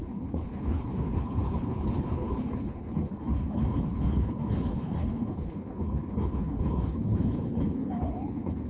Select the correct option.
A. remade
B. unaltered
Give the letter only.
A